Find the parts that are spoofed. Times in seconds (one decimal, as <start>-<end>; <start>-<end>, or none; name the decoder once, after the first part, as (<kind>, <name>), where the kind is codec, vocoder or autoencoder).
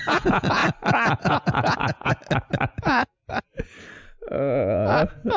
0.0-0.6 (vocoder, Vocos); 1.2-2.1; 2.8-3.2